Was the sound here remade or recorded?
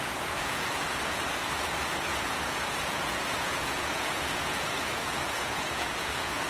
remade